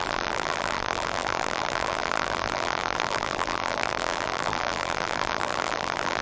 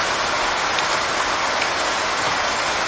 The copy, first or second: first